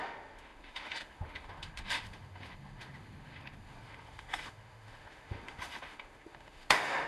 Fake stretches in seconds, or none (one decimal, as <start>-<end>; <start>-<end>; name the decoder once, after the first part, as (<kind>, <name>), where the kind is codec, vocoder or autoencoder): 0.0-7.1 (autoencoder, DAC-VAE)